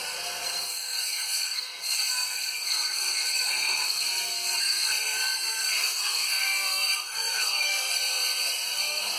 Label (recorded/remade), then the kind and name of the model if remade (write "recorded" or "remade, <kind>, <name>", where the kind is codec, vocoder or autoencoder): remade, codec, SNAC